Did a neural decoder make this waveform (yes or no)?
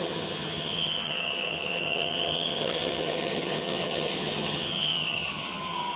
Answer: yes